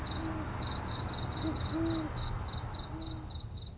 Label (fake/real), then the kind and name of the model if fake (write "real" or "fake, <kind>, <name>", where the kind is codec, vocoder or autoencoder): real